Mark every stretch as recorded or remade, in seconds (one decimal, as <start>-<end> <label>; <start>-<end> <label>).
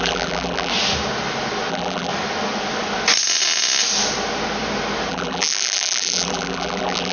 0.0-0.7 remade; 0.7-1.7 recorded; 1.7-2.1 remade; 2.1-5.1 recorded; 5.1-7.1 remade